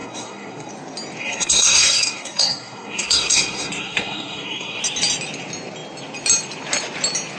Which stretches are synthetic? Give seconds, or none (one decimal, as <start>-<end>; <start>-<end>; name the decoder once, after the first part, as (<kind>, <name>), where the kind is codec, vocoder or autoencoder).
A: 0.0-0.7 (codec, SNAC); 1.2-4.8